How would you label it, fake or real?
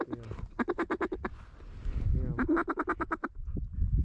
real